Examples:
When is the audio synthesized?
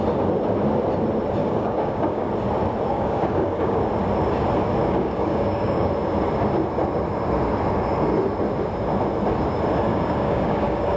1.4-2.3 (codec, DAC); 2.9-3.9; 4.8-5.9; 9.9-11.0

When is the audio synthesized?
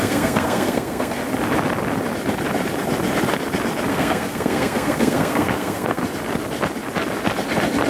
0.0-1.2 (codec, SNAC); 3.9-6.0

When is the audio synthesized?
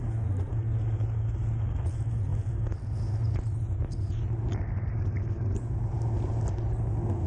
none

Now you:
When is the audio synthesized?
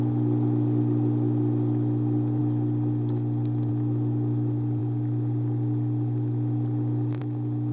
none